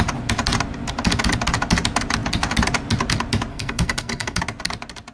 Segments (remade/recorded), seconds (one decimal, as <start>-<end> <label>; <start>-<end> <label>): 0.0-3.5 recorded; 3.5-4.4 remade; 4.4-5.1 recorded